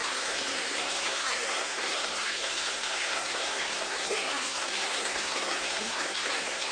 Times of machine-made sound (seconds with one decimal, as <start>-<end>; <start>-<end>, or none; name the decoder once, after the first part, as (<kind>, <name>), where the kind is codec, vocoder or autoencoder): 0.0-6.7 (codec, SNAC)